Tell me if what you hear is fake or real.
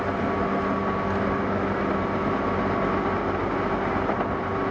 real